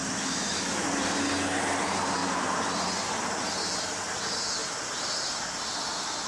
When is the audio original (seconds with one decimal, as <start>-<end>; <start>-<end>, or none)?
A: 0.9-6.3